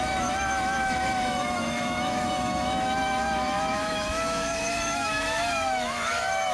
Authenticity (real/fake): fake